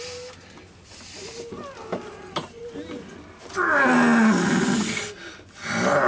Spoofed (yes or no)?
no